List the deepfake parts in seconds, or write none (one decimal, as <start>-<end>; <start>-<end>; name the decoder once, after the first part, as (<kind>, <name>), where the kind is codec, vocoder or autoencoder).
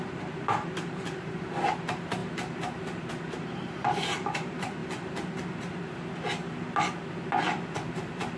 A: 0.0-2.2 (vocoder, BigVGAN v2); 3.1-4.8; 7.9-8.4